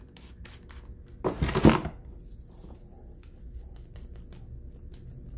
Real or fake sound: real